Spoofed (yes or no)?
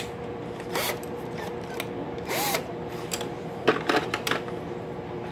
no